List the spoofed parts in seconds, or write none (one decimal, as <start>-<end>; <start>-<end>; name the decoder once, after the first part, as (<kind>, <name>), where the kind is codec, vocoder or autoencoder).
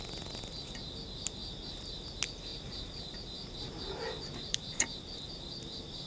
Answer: 2.5-6.1 (vocoder, BigVGAN v2)